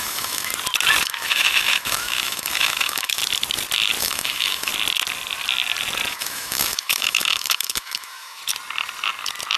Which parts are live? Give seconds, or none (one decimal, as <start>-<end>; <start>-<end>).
0.5-1.0; 3.2-4.0; 4.7-6.1; 8.4-9.6